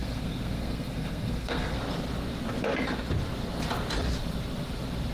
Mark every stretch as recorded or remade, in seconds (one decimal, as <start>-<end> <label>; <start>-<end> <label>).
0.0-1.8 remade; 1.8-5.1 recorded